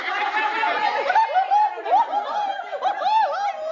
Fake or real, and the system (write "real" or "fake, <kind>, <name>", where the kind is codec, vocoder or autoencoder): real